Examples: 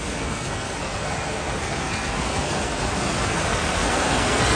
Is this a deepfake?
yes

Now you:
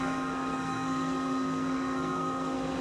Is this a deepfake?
yes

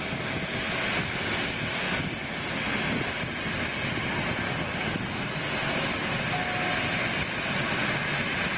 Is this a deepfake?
no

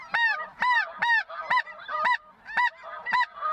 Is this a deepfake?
no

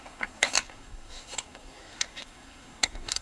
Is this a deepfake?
yes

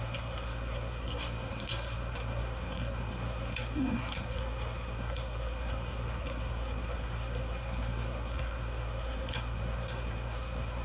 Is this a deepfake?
yes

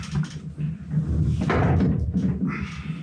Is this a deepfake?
no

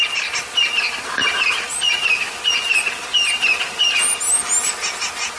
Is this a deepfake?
no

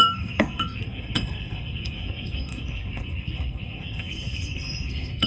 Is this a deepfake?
yes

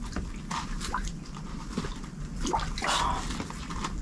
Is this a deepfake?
no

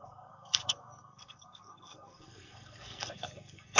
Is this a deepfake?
yes